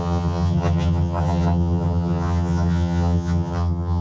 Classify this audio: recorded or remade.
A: remade